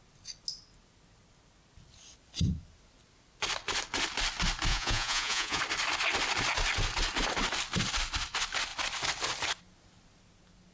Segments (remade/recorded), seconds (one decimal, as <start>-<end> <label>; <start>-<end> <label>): 0.0-4.7 recorded; 4.7-5.6 remade; 5.6-10.7 recorded